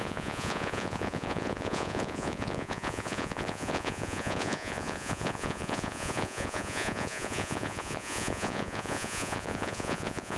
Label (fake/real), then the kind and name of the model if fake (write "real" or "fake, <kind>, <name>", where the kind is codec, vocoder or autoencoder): fake, vocoder, Vocos